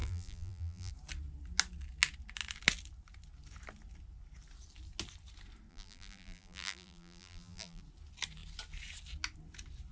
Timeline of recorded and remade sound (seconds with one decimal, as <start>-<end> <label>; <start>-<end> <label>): 0.0-0.9 remade; 0.9-5.7 recorded; 5.7-7.8 remade; 7.8-9.9 recorded